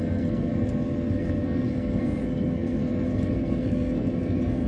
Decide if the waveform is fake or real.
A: fake